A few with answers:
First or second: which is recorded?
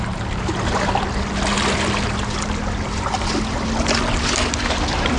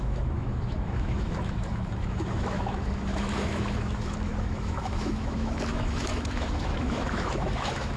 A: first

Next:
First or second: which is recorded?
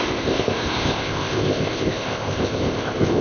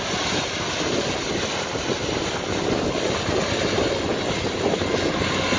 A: second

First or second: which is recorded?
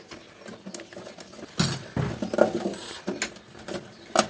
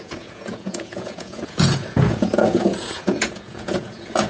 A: first